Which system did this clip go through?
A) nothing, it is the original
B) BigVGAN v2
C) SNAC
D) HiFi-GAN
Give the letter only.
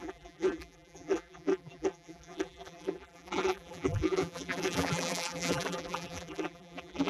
B